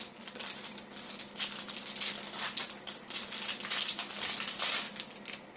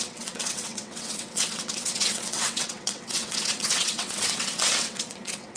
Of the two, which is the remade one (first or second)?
second